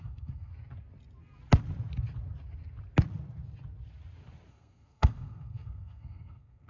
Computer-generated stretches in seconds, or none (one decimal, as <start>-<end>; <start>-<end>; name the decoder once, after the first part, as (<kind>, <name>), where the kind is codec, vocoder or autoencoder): 0.0-0.5 (codec, SNAC); 4.5-6.7